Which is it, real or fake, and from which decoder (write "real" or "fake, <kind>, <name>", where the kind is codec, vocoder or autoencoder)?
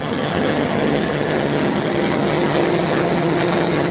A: fake, vocoder, HiFi-GAN